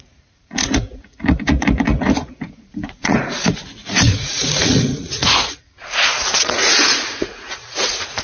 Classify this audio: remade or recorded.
remade